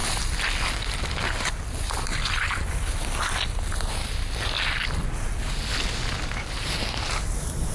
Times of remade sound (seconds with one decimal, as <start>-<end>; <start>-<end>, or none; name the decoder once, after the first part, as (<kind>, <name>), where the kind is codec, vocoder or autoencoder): none